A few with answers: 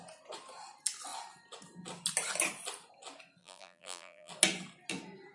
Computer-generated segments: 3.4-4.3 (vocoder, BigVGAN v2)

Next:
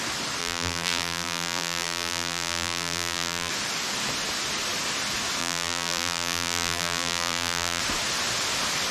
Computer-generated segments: 0.4-3.5 (vocoder, BigVGAN v2); 5.4-7.8

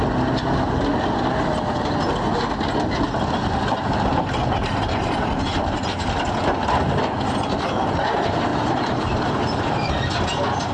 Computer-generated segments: 4.6-6.2 (vocoder, BigVGAN v2); 8.5-9.9

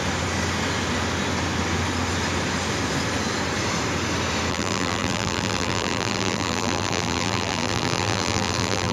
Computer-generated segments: 4.5-8.9 (vocoder, BigVGAN v2)

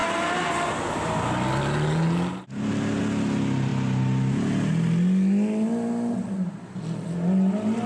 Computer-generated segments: none